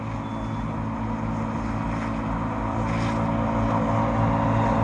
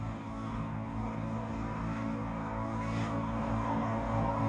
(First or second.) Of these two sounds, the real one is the first